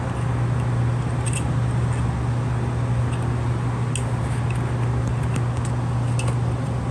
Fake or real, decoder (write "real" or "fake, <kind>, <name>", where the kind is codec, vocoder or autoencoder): real